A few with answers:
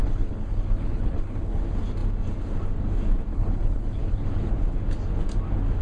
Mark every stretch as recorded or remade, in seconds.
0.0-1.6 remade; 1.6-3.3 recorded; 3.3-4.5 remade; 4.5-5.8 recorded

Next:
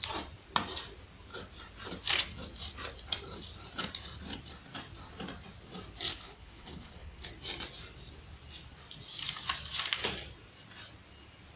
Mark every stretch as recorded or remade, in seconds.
0.0-6.1 recorded; 6.1-7.2 remade; 7.2-11.6 recorded

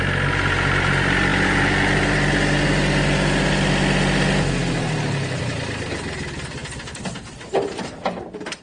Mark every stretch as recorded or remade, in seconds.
0.0-8.6 recorded

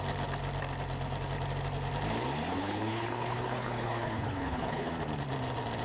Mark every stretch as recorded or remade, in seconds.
0.0-2.5 recorded; 2.5-4.9 remade; 4.9-5.8 recorded

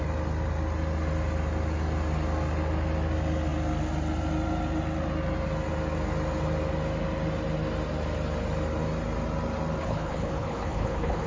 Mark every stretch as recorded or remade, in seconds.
0.0-9.8 recorded; 9.8-11.3 remade